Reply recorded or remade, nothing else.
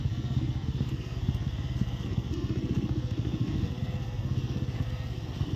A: remade